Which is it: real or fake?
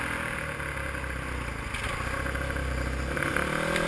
real